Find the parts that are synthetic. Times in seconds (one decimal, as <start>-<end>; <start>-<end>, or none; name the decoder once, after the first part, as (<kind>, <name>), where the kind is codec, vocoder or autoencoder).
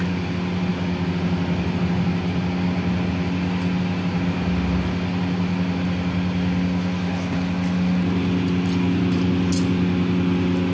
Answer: none